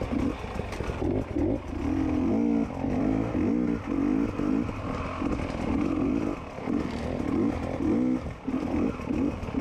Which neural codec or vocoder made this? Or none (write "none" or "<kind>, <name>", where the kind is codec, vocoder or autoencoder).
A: none